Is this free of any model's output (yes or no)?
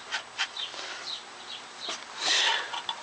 yes